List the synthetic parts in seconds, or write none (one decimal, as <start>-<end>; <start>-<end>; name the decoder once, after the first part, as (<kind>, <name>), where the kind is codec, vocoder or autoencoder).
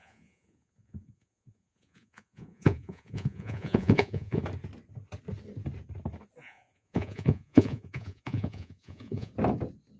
0.0-4.4 (vocoder, Vocos); 6.4-9.3